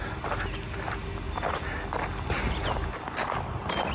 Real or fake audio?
real